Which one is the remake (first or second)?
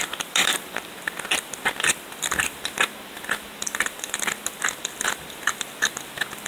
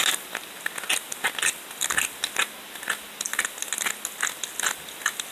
first